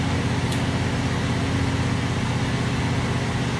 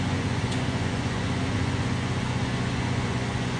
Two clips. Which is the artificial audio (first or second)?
second